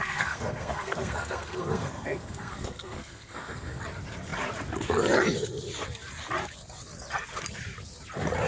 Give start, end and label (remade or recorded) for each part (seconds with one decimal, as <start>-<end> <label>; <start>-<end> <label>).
0.0-3.8 remade; 3.8-8.5 recorded